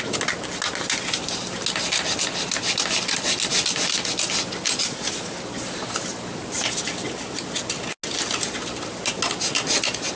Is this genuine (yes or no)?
yes